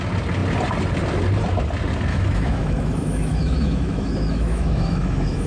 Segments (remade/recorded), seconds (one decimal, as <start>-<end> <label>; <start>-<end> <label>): 0.0-2.1 recorded; 2.1-5.5 remade